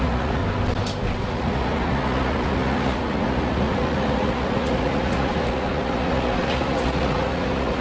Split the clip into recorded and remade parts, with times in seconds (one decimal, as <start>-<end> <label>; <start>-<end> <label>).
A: 0.0-0.4 remade; 0.4-1.2 recorded; 1.2-7.8 remade